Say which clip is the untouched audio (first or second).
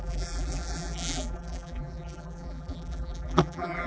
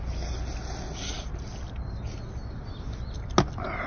second